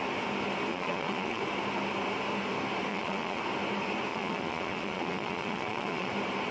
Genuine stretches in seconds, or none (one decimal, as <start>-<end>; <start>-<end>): 0.0-0.7; 1.4-2.9; 3.4-4.1; 6.1-6.5